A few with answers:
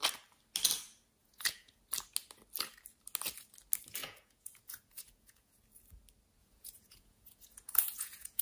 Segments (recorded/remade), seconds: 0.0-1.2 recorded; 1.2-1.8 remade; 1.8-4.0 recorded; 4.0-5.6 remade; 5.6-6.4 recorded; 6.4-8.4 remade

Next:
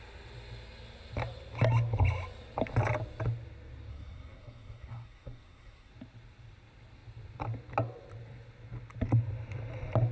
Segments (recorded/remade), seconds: 0.0-3.9 recorded; 3.9-5.9 remade; 5.9-10.1 recorded